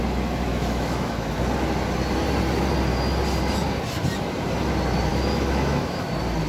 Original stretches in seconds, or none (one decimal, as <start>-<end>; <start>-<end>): 0.0-0.5; 1.4-5.1; 6.1-6.5